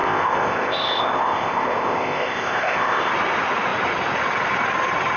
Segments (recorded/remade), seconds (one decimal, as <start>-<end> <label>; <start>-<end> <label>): 0.0-3.1 remade; 3.1-5.2 recorded